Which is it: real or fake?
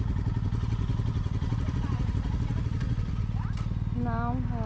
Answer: real